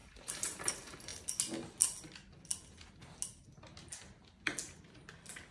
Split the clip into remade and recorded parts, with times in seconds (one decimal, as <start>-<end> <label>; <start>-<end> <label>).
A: 0.0-0.7 remade; 0.7-5.5 recorded